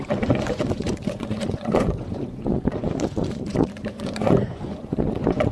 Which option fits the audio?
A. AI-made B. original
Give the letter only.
A